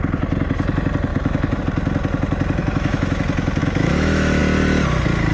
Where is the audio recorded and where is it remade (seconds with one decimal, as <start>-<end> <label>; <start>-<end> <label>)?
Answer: 0.0-1.1 recorded; 1.1-1.6 remade; 1.6-2.6 recorded; 2.6-3.2 remade; 3.2-3.6 recorded; 3.6-4.4 remade; 4.4-5.3 recorded